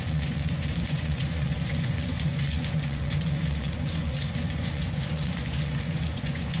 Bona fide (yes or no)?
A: no